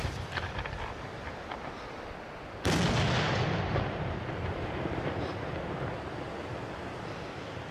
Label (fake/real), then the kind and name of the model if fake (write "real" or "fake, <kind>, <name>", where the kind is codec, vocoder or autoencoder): real